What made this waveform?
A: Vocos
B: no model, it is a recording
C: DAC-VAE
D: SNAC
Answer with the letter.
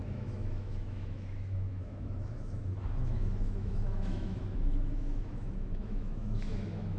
C